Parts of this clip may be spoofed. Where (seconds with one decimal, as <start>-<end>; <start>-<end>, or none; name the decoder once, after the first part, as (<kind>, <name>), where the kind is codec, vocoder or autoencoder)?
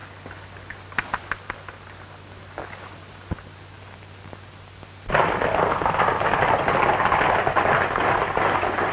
none